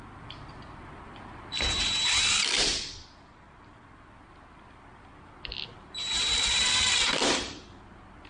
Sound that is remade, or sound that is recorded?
remade